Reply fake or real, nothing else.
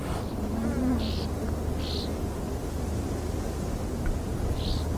real